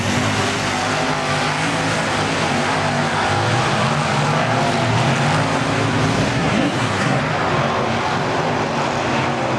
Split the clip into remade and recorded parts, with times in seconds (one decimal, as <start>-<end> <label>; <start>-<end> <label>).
0.0-6.3 recorded; 6.3-7.2 remade; 7.2-9.6 recorded